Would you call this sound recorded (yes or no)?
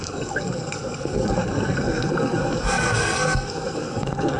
no